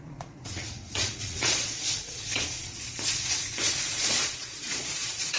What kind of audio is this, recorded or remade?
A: remade